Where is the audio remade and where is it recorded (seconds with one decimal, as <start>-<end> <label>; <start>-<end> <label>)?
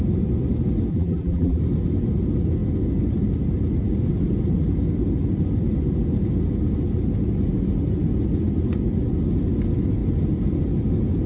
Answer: 0.0-0.9 recorded; 0.9-1.6 remade; 1.6-11.3 recorded